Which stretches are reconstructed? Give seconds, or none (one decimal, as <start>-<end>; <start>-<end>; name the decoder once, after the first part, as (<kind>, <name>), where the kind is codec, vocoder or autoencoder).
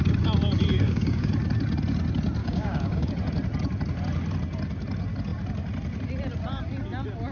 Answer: 0.7-1.3 (codec, DAC); 2.4-3.1